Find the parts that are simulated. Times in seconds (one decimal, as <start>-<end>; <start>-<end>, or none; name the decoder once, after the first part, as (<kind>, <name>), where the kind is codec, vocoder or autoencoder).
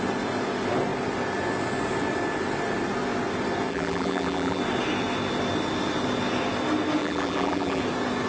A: 3.7-4.6 (vocoder, BigVGAN v2); 7.0-7.8